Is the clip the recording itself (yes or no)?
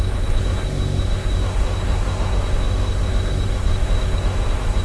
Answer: no